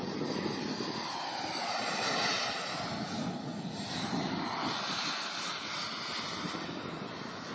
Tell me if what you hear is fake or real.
real